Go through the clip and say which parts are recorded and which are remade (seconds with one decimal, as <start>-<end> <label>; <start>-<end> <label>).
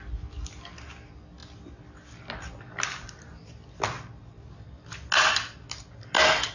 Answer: 0.0-6.5 recorded